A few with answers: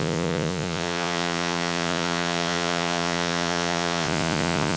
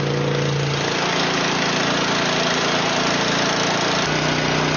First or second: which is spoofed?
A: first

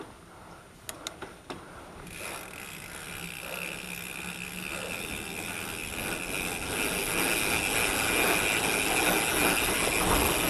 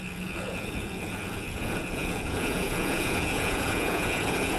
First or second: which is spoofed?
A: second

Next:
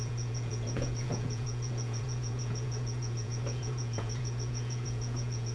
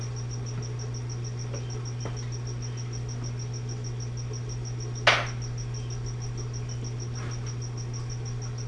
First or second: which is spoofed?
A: first